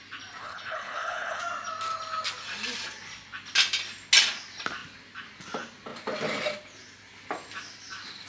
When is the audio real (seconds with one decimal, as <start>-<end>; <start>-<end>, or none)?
0.0-0.4; 1.4-8.3